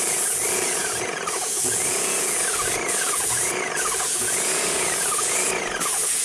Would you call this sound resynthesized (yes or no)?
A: yes